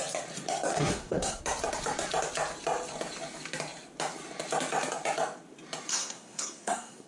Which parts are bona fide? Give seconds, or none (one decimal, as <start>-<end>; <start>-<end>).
0.0-0.7; 1.4-5.9